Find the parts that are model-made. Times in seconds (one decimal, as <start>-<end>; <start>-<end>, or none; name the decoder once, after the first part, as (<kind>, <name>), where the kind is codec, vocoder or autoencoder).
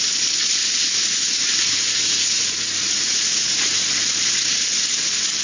0.6-3.8 (vocoder, Vocos)